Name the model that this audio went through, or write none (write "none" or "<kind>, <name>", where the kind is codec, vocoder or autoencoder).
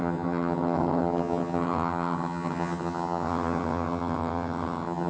vocoder, HiFi-GAN